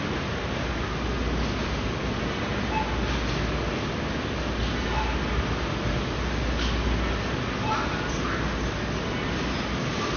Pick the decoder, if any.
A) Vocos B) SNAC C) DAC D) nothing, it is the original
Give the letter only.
D